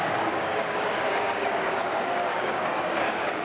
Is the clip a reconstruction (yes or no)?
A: yes